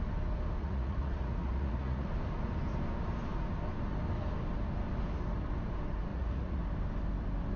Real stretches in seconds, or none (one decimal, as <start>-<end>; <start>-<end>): 0.0-0.6; 2.1-6.1; 6.6-7.6